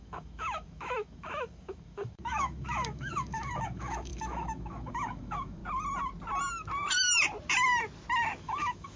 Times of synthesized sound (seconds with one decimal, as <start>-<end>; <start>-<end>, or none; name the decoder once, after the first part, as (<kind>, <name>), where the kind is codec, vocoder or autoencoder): 0.0-5.6 (autoencoder, DAC-VAE); 8.4-9.0